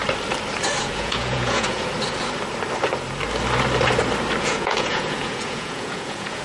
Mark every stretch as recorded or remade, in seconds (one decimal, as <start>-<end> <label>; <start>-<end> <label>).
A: 0.0-0.8 recorded; 0.8-1.9 remade; 1.9-4.4 recorded; 4.4-6.4 remade